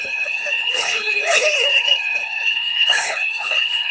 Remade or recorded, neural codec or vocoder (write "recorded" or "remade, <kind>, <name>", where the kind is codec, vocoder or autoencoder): remade, codec, HILCodec